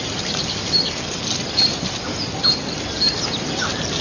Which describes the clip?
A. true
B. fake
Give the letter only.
A